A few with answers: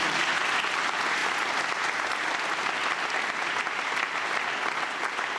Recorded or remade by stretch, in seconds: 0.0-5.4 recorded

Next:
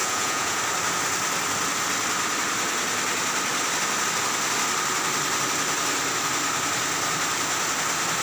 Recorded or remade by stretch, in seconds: 0.0-0.6 remade; 0.6-8.2 recorded

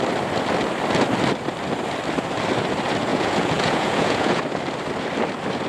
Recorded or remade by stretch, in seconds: 0.0-3.1 recorded; 3.1-4.4 remade; 4.4-5.7 recorded

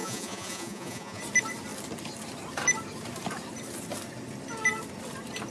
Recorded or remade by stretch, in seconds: 0.0-1.2 remade; 1.2-5.5 recorded

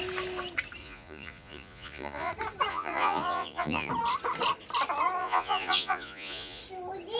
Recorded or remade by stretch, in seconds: 0.0-0.8 recorded; 0.8-2.3 remade; 2.3-2.7 recorded; 2.7-3.9 remade; 3.9-5.2 recorded; 5.2-6.6 remade; 6.6-7.2 recorded

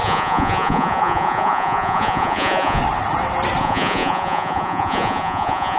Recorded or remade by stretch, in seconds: 0.0-2.8 remade; 2.8-3.6 recorded; 3.6-5.8 remade

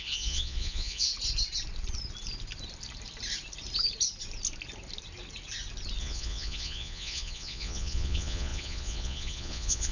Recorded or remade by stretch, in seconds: 0.0-1.1 remade; 1.1-6.0 recorded; 6.0-9.9 remade

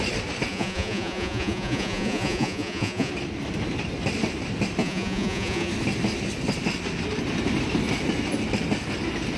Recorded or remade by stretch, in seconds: 0.0-0.5 recorded; 0.5-3.1 remade; 3.1-4.8 recorded; 4.8-5.7 remade; 5.7-9.4 recorded